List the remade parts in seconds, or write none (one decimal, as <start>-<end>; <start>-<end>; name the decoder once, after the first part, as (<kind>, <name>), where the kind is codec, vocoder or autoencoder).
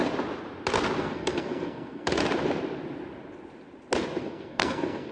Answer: 1.0-2.2 (codec, SNAC); 4.2-5.1